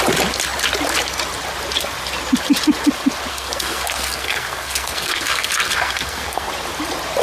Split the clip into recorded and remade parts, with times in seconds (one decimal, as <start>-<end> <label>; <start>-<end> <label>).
0.0-3.3 recorded; 3.3-6.5 remade; 6.5-7.2 recorded